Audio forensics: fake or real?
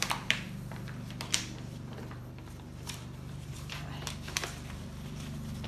fake